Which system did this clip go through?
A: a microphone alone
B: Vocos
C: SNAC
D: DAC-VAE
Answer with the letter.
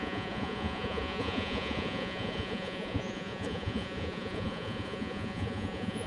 B